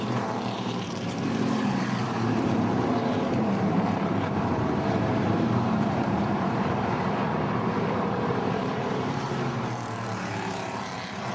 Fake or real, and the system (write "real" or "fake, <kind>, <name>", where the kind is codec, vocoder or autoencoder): fake, vocoder, BigVGAN v2